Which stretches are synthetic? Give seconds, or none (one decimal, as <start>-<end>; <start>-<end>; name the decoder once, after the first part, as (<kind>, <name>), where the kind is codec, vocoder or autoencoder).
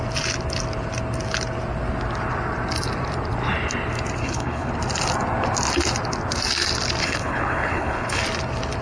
4.2-4.7 (codec, HILCodec); 7.0-8.2